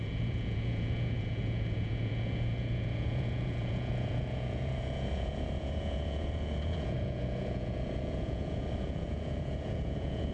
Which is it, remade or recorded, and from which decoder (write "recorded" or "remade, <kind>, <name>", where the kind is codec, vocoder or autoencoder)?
remade, vocoder, Vocos